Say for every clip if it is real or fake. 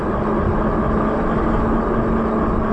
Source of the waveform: real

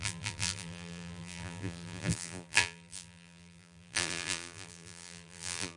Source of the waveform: fake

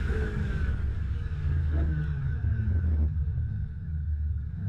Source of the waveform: fake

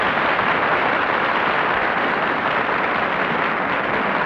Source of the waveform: real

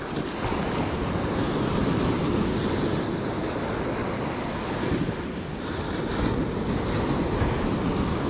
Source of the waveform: real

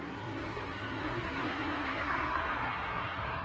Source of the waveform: fake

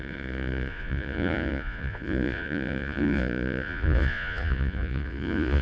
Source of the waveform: fake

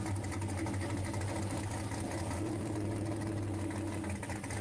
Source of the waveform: real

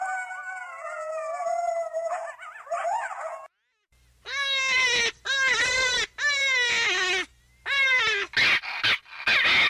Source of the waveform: real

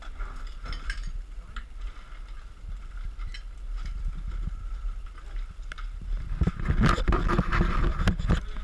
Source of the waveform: real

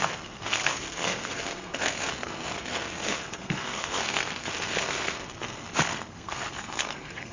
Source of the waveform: fake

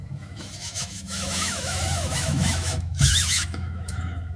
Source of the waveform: fake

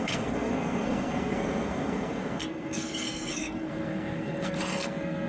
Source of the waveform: fake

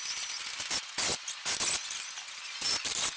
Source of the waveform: real